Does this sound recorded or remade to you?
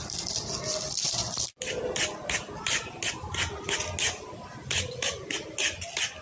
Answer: recorded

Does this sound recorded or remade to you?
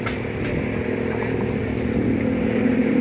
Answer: recorded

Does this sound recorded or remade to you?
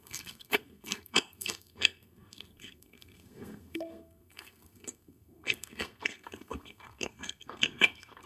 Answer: remade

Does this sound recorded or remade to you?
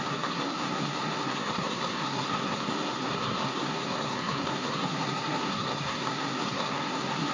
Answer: remade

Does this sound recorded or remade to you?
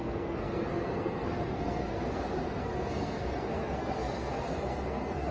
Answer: remade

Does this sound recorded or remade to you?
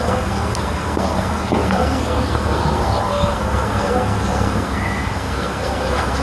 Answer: remade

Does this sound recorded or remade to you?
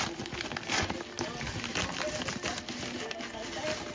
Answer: recorded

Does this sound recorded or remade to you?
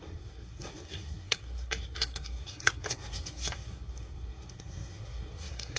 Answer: remade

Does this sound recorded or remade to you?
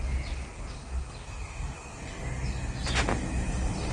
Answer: recorded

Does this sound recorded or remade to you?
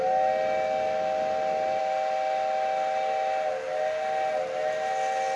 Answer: recorded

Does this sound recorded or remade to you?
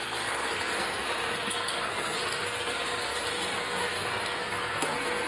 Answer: remade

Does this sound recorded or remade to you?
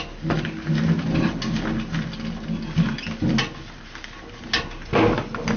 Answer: recorded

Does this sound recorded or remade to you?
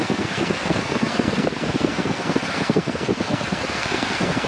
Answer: remade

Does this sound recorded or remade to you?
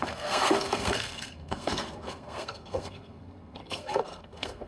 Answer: remade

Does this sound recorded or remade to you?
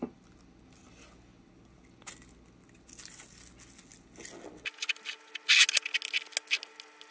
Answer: recorded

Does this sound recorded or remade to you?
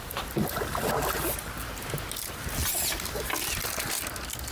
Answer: recorded